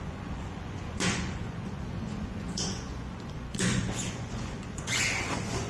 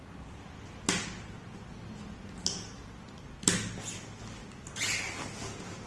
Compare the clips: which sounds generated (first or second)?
first